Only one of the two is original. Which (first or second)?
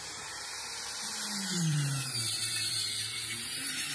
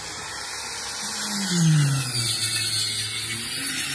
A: second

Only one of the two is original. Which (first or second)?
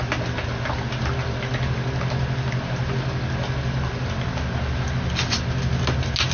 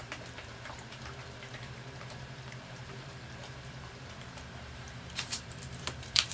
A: first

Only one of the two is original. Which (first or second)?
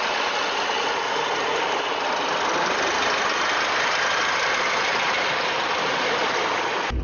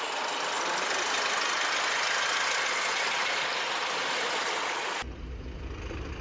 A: second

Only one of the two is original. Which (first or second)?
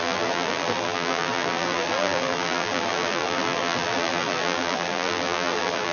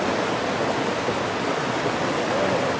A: second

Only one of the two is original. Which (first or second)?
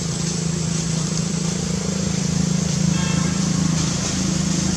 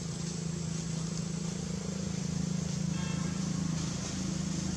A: second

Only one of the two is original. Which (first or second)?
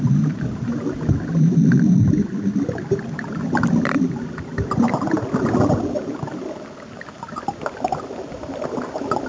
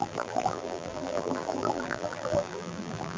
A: first